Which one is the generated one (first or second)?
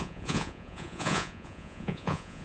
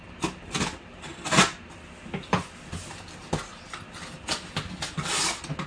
first